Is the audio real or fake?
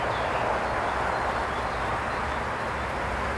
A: real